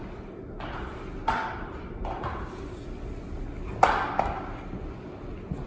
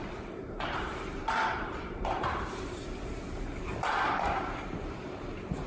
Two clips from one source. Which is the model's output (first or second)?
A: second